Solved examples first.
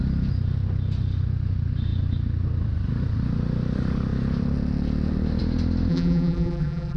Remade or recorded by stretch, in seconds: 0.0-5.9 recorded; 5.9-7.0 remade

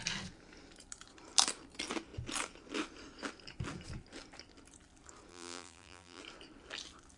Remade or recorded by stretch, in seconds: 0.0-5.3 recorded; 5.3-6.2 remade; 6.2-7.2 recorded

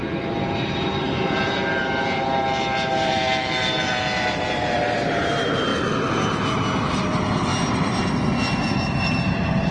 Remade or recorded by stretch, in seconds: 0.0-5.7 remade; 5.7-6.9 recorded; 6.9-7.5 remade; 7.5-8.6 recorded; 8.6-9.7 remade

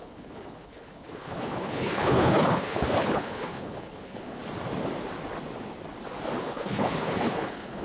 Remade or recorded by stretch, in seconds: 0.0-4.4 remade; 4.4-6.4 recorded; 6.4-7.8 remade

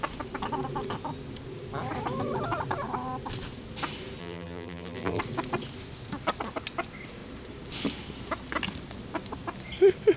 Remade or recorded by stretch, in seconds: 0.0-4.2 recorded; 4.2-5.2 remade; 5.2-10.2 recorded